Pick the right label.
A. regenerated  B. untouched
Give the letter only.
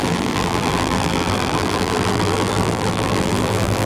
A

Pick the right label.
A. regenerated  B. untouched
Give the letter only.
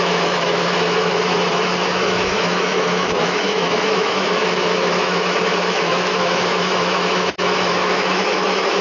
A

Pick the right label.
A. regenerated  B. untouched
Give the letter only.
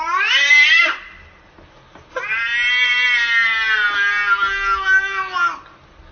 B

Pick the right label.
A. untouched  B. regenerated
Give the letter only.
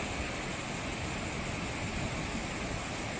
A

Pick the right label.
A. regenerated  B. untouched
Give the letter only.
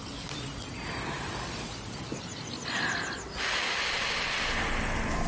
B